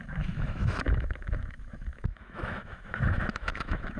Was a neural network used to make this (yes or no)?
yes